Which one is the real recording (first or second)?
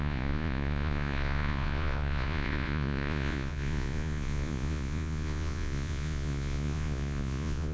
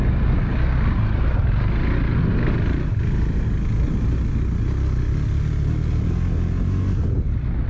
second